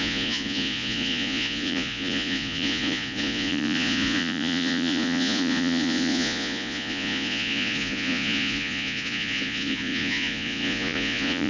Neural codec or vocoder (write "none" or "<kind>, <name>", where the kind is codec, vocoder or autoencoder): vocoder, Vocos